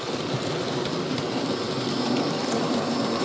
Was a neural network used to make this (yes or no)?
yes